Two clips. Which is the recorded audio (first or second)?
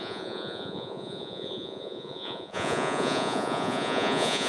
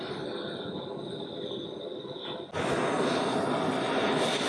second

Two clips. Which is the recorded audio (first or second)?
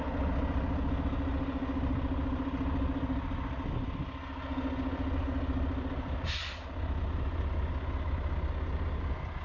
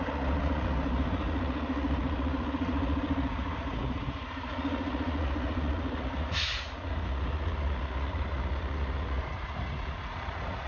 first